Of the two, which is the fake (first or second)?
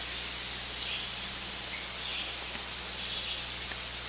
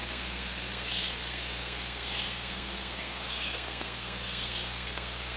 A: second